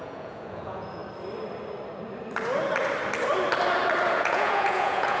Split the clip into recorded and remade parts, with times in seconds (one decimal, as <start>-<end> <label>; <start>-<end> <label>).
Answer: 0.0-1.0 remade; 1.0-4.1 recorded; 4.1-5.2 remade

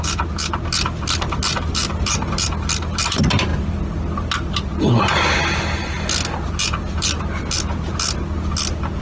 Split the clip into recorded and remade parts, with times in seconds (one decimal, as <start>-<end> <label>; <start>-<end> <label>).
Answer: 0.0-9.0 recorded

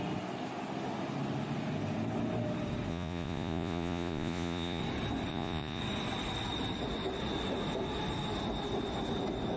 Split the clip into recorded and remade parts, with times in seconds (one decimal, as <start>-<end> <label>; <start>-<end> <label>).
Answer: 0.0-2.9 recorded; 2.9-4.8 remade; 4.8-5.3 recorded; 5.3-5.8 remade; 5.8-9.6 recorded

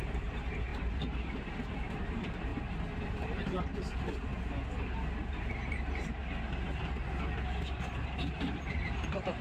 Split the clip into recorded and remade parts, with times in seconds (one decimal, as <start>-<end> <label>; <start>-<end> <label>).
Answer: 0.0-2.5 remade; 2.5-3.0 recorded; 3.0-4.3 remade; 4.3-5.7 recorded; 5.7-6.2 remade; 6.2-8.7 recorded; 8.7-9.4 remade

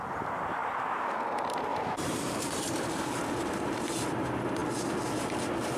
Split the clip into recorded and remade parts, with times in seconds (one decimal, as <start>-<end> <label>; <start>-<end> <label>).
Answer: 0.0-1.7 recorded; 1.7-3.1 remade; 3.1-5.8 recorded